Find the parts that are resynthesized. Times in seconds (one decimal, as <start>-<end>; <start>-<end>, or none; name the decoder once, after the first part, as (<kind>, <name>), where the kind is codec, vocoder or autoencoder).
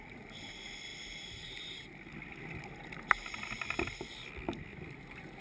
none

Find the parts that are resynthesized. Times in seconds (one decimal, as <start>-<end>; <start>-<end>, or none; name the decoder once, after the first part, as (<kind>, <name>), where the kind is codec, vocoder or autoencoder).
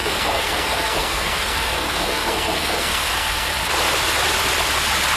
0.0-3.5 (codec, SNAC)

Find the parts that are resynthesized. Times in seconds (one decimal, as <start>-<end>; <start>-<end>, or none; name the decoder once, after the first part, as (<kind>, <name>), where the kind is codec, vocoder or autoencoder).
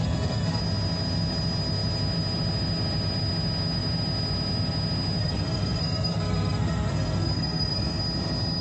0.0-0.6 (codec, SNAC); 5.2-8.0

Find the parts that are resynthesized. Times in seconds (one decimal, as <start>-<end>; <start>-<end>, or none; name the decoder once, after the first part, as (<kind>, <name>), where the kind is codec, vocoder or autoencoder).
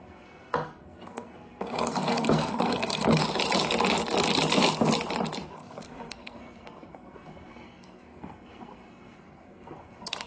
0.0-3.2 (codec, SNAC); 5.5-10.3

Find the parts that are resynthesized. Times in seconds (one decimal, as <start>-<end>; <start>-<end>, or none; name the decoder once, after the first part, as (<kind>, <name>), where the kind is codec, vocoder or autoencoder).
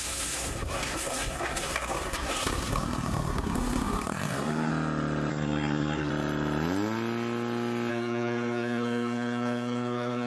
0.0-4.7 (codec, SNAC); 5.3-6.1; 7.9-10.3